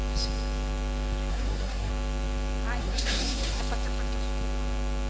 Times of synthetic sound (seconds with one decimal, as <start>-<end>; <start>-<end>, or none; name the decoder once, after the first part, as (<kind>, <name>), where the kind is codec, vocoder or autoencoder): 1.3-1.9 (codec, SNAC); 2.8-3.6